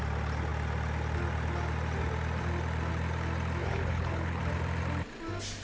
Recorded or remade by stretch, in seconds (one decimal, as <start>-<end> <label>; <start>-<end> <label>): 0.0-3.6 recorded; 3.6-4.4 remade; 4.4-5.6 recorded